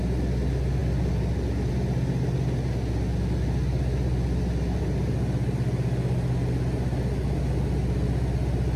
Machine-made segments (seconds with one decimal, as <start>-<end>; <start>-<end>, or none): none